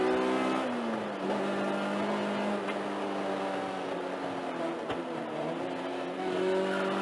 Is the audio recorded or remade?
recorded